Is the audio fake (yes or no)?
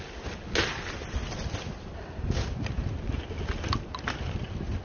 no